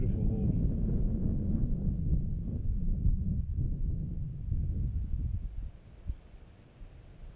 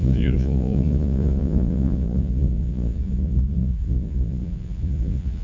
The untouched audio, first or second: first